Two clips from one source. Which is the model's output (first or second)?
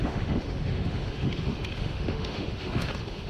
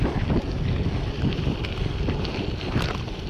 first